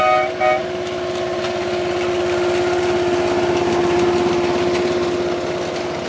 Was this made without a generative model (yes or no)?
yes